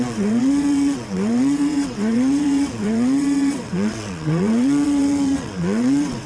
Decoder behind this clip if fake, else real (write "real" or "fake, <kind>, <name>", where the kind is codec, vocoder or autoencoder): fake, vocoder, WaveNeXt